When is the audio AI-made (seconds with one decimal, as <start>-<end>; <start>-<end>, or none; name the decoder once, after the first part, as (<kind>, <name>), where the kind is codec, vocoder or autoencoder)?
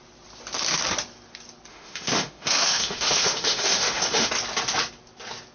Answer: 1.7-4.3 (autoencoder, DAC-VAE)